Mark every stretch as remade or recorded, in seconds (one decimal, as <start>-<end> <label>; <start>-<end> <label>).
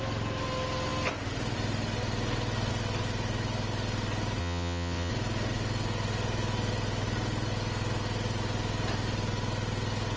0.0-4.4 recorded; 4.4-5.1 remade; 5.1-10.2 recorded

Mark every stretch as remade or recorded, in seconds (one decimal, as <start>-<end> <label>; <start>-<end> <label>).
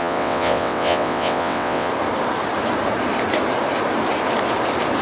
0.0-1.9 remade; 1.9-5.0 recorded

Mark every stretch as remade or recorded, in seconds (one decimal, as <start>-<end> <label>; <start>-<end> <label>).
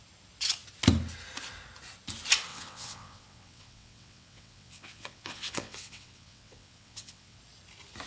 0.0-2.5 recorded; 2.5-7.4 remade; 7.4-8.1 recorded